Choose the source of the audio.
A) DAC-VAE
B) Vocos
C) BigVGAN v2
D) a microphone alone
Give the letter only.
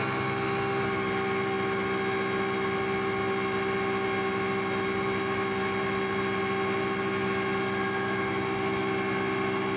D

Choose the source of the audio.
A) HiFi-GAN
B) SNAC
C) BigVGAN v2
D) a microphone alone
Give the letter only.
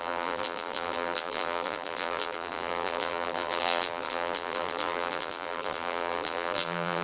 C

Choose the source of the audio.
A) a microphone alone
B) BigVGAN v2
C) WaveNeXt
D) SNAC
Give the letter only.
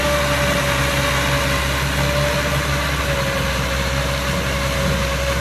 A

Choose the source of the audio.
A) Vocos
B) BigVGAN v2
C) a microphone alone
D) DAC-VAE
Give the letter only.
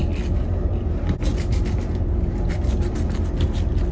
B